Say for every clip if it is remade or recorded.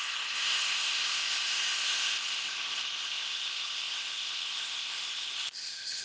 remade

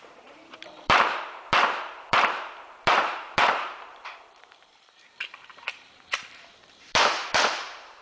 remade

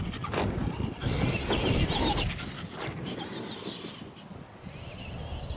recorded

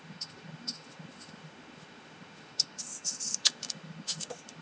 remade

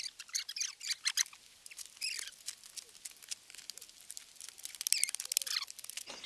recorded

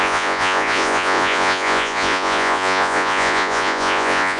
remade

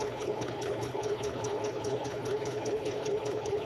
remade